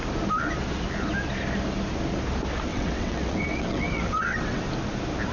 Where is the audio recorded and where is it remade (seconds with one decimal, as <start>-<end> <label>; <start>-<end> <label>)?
0.0-2.7 recorded; 2.7-4.6 remade; 4.6-5.3 recorded